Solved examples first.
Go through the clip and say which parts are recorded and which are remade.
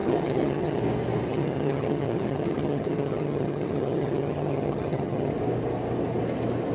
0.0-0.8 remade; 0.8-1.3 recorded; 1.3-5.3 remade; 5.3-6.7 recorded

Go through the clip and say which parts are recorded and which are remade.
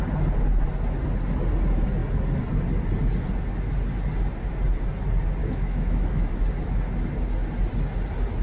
0.0-5.4 recorded; 5.4-6.3 remade; 6.3-8.4 recorded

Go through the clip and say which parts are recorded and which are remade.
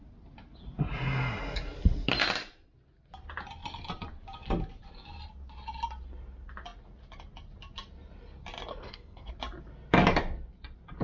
0.0-8.7 recorded; 8.7-9.3 remade; 9.3-11.0 recorded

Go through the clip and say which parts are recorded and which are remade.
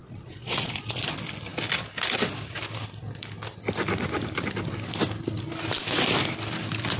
0.0-1.0 remade; 1.0-7.0 recorded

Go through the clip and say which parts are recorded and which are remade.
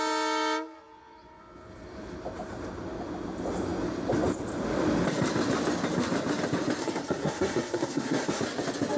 0.0-6.8 recorded; 6.8-8.4 remade; 8.4-9.0 recorded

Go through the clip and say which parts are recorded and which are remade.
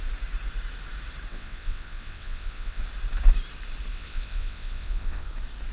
0.0-1.3 recorded; 1.3-2.8 remade; 2.8-3.9 recorded; 3.9-5.3 remade; 5.3-5.7 recorded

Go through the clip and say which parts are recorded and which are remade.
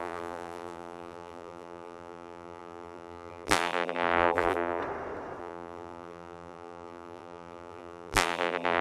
0.0-4.8 remade; 4.8-5.4 recorded; 5.4-8.8 remade